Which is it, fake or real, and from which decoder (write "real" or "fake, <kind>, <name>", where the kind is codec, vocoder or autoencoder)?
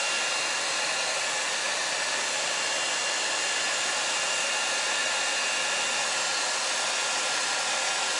real